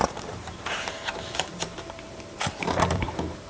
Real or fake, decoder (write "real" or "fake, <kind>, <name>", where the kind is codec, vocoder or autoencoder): fake, vocoder, BigVGAN v2